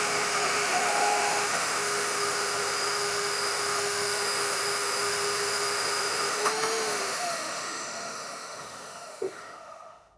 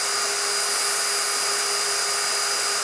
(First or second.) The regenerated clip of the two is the first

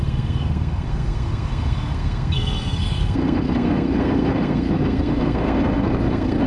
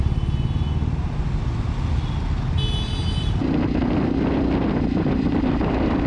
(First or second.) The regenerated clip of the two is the first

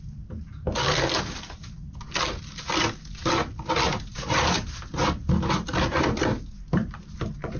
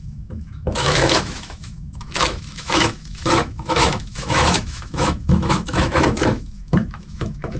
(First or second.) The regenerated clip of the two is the second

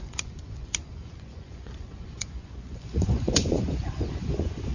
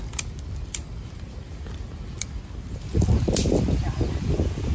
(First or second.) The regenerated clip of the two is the first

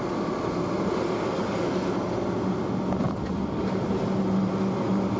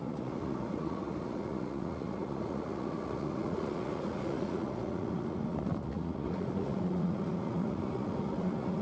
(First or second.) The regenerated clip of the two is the second